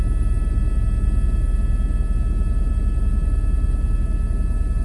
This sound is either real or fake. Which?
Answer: real